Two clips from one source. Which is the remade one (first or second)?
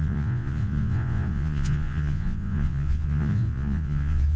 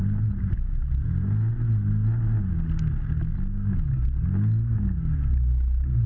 first